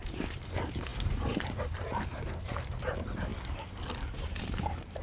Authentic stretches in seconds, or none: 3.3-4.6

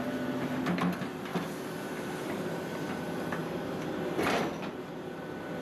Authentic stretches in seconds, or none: 0.0-1.3; 2.4-3.4; 4.4-5.6

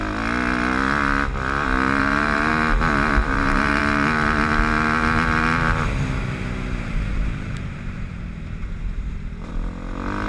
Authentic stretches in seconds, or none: 0.0-2.0; 2.5-3.2; 3.8-7.1; 9.5-10.3

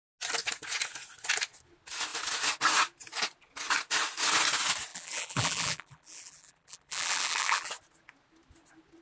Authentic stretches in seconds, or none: 0.0-4.9; 7.7-9.0